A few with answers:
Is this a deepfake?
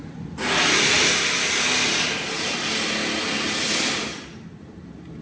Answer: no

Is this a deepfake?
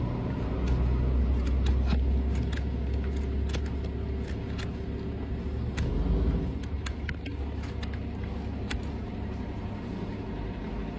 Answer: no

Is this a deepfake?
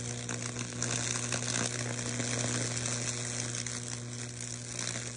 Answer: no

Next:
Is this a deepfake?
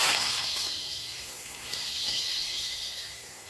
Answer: yes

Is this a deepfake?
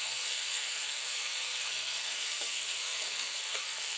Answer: yes